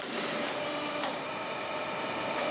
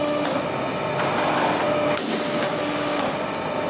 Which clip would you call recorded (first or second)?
second